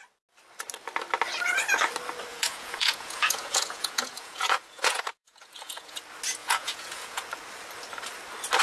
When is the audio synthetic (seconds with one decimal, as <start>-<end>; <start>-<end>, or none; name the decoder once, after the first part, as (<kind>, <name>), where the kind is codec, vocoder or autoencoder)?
2.3-6.0 (vocoder, Vocos); 6.4-7.2